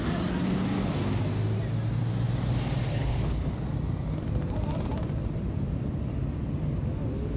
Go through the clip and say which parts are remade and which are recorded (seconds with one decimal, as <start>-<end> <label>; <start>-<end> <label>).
0.0-2.9 recorded; 2.9-3.5 remade; 3.5-7.4 recorded